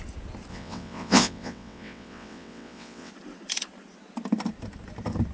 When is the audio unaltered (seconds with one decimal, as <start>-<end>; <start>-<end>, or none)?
0.0-0.5; 3.1-5.3